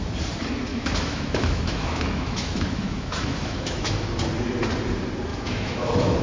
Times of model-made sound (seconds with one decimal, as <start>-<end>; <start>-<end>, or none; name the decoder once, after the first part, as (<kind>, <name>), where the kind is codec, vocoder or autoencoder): 0.7-3.9 (autoencoder, DAC-VAE); 5.3-6.2